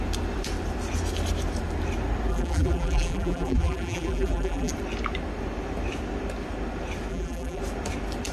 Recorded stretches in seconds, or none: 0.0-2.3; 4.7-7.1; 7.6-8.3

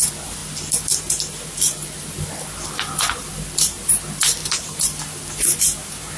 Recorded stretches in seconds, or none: 0.0-6.2

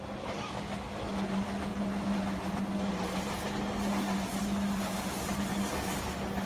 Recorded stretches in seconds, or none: 0.0-6.5

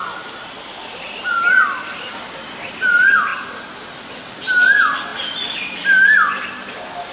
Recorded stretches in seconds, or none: 0.0-7.1

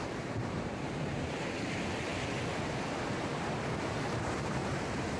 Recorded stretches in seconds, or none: 0.0-0.4; 1.5-4.6

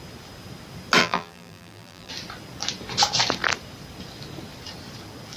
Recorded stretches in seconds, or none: 0.0-1.0; 2.1-5.4